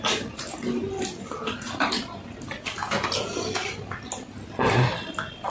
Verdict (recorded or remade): recorded